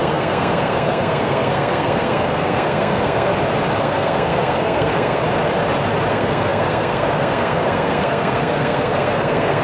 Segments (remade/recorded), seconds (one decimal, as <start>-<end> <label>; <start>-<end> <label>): 0.0-3.3 remade; 3.3-3.8 recorded; 3.8-5.2 remade; 5.2-6.1 recorded; 6.1-9.6 remade

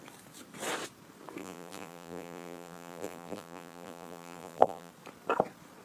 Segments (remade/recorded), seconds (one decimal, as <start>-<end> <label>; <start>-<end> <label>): 0.0-1.4 recorded; 1.4-4.9 remade; 4.9-5.8 recorded